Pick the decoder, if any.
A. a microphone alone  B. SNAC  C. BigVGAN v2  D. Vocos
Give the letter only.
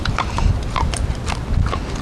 A